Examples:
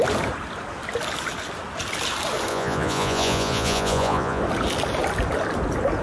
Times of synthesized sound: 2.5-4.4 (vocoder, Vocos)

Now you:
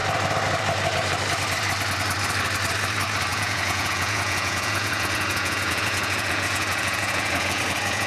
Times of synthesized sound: 3.3-8.1 (vocoder, Vocos)

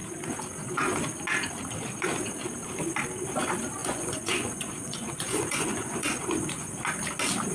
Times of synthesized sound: 3.8-6.7 (vocoder, Vocos)

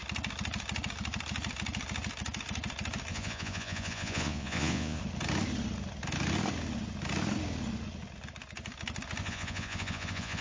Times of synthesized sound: 3.1-5.0 (vocoder, Vocos); 9.2-10.4

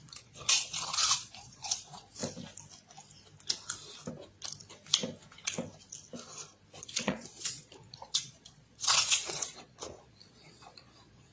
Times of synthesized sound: 0.0-2.2 (vocoder, Vocos); 6.8-11.3

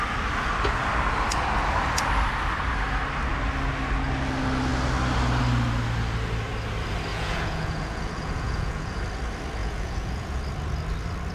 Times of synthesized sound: 7.1-9.0 (vocoder, Vocos); 9.6-10.4